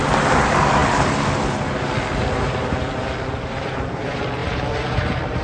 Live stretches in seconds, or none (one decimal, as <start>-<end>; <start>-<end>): 0.0-0.8; 1.4-2.9; 4.0-5.4